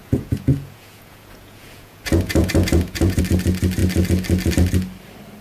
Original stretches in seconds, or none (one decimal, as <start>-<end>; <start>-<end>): 3.2-5.4